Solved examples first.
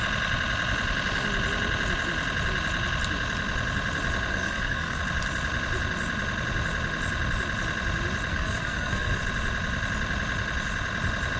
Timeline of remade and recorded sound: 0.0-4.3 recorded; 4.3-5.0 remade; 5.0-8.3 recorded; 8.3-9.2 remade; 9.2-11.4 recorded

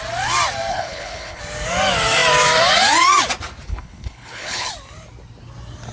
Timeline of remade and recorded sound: 0.0-0.7 recorded; 0.7-1.4 remade; 1.4-3.7 recorded; 3.7-4.7 remade; 4.7-5.9 recorded

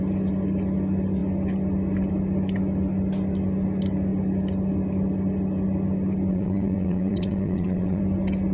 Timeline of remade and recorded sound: 0.0-6.3 recorded; 6.3-8.0 remade; 8.0-8.5 recorded